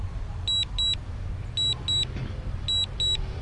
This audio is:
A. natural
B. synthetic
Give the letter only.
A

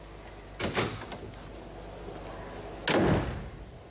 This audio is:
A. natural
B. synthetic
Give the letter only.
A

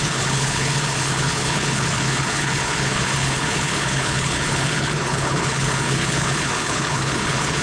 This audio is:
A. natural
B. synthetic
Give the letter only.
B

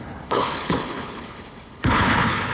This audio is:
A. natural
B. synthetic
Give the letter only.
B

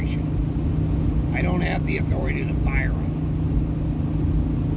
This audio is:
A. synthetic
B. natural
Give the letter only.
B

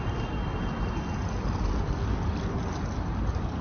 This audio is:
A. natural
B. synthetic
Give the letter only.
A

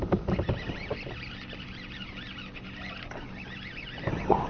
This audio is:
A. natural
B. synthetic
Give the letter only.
A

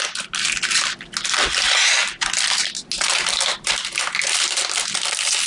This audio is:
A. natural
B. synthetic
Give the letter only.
A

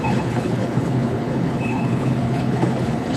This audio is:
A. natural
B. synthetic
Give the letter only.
B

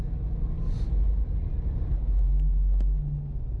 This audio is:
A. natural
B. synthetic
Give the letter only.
A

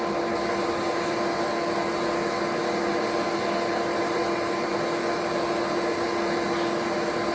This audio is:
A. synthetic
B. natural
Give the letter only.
B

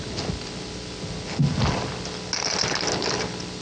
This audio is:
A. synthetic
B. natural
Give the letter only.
B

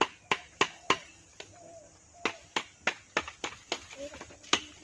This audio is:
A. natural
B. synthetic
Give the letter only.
A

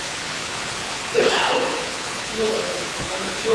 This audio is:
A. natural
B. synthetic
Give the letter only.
B